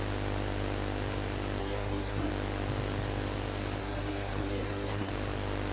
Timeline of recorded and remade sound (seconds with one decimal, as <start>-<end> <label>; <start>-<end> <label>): 0.0-1.6 recorded; 1.6-2.3 remade; 2.3-3.8 recorded; 3.8-5.1 remade; 5.1-5.7 recorded